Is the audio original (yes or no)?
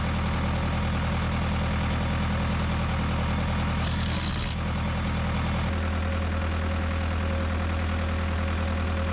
yes